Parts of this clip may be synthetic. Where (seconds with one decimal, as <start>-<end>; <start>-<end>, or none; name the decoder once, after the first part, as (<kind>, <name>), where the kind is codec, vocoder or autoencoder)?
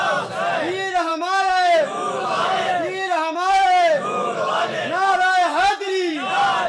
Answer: 1.1-5.1 (autoencoder, DAC-VAE)